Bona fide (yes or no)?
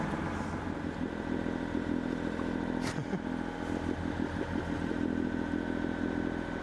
yes